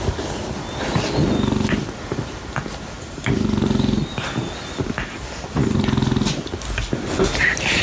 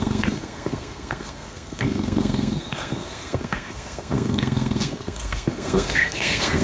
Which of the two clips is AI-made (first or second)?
second